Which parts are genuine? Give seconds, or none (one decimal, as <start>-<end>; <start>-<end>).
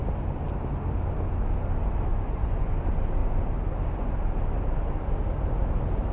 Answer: 0.0-2.1; 2.8-6.1